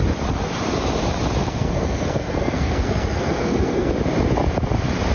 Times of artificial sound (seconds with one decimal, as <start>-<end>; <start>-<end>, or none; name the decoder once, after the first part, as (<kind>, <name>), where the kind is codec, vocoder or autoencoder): 1.4-3.9 (codec, SNAC)